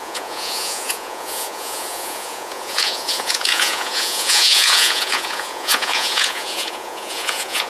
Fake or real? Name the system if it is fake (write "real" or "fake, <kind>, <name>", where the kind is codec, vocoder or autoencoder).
fake, vocoder, Vocos